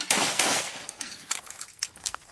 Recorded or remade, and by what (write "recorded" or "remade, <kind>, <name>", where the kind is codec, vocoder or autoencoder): remade, codec, SNAC